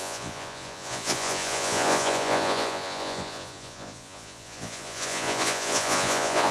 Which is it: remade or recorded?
remade